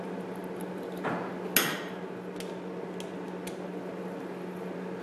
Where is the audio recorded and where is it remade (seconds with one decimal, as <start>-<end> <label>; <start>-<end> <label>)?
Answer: 0.0-5.0 recorded